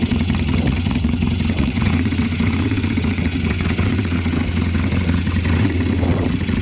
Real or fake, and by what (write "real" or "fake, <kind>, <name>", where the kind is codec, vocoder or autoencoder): fake, vocoder, WaveNeXt